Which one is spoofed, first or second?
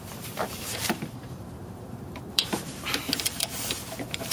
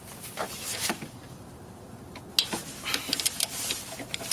first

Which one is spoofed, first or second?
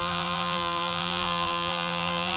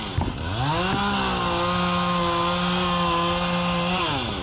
first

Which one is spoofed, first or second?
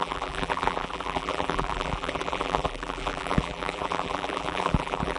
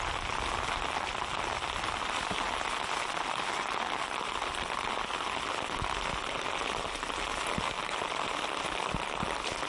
first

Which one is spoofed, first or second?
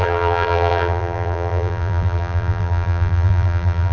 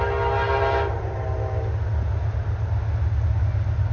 first